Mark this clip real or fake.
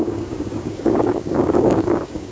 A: fake